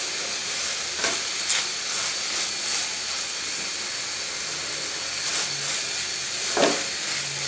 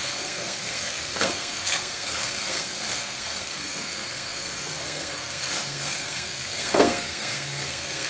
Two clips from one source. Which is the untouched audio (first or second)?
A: first